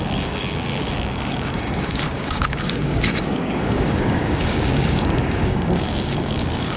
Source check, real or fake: fake